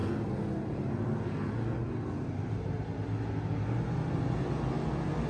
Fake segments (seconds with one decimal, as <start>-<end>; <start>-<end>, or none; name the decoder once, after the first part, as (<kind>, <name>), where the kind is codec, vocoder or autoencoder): none